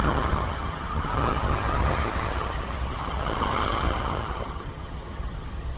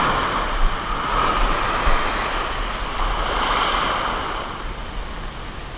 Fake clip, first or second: first